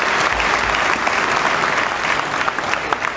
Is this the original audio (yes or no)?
yes